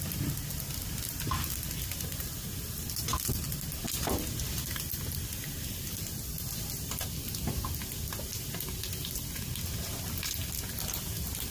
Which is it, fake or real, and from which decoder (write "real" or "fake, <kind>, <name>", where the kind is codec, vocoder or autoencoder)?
real